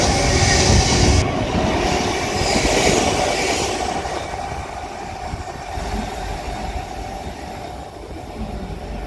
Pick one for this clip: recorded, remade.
recorded